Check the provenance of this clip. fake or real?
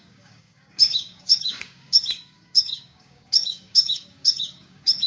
fake